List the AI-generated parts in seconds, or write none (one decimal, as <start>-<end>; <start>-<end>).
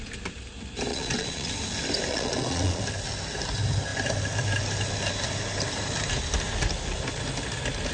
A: 0.9-1.5; 2.1-2.8